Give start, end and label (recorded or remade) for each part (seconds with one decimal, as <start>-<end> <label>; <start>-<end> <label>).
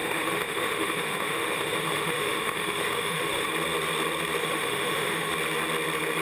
0.0-3.5 remade; 3.5-4.4 recorded; 4.4-5.3 remade; 5.3-6.2 recorded